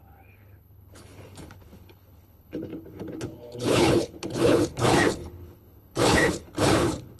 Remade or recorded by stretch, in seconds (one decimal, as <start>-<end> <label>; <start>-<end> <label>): 0.0-7.2 remade